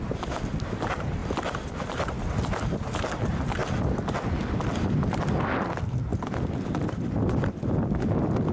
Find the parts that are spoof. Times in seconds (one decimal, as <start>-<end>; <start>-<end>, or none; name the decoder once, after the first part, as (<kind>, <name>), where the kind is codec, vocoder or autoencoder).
1.2-1.8 (vocoder, BigVGAN v2); 3.6-4.7; 6.1-7.5